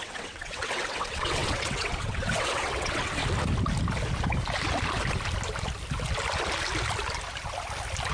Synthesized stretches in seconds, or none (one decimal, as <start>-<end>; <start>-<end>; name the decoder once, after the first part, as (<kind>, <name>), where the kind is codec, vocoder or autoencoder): 0.0-3.2 (vocoder, WaveNeXt)